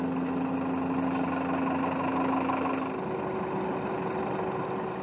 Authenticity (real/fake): real